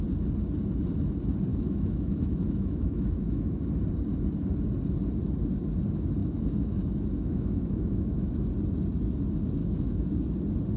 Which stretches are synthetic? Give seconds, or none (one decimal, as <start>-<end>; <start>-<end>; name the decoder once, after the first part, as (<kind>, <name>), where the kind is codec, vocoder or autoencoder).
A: 1.5-3.7 (autoencoder, DAC-VAE); 6.2-8.5; 9.6-10.1